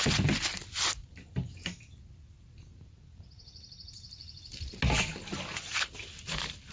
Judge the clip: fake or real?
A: real